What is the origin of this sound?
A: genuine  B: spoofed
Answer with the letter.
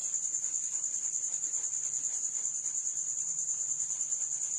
A